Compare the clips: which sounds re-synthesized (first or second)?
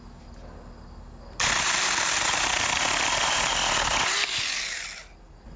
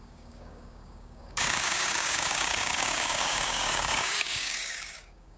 second